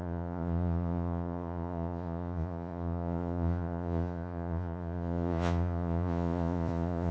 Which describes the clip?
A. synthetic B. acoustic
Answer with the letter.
A